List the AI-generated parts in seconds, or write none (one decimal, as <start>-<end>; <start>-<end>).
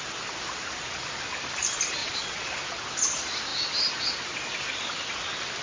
2.0-2.5